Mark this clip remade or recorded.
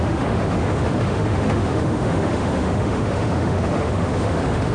remade